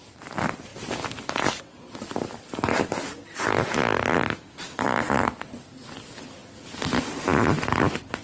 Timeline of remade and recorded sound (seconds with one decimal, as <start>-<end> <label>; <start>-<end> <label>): 0.0-0.7 recorded; 0.7-3.0 remade; 3.0-8.2 recorded